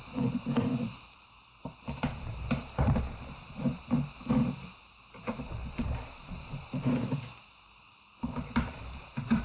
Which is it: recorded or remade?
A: remade